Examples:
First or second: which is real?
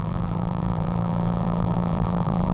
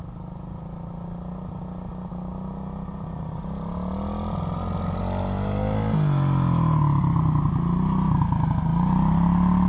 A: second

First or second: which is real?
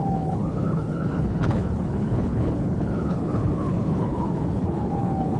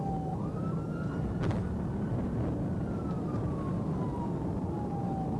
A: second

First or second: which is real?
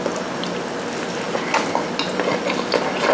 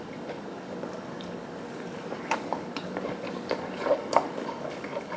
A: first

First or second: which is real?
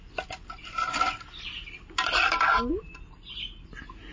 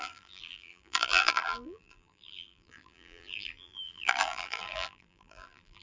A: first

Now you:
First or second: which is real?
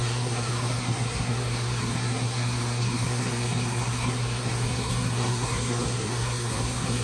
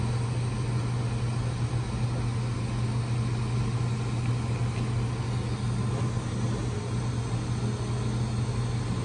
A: second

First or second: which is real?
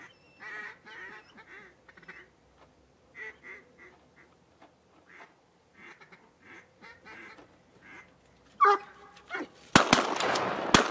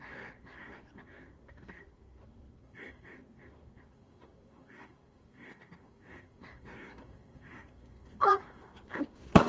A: first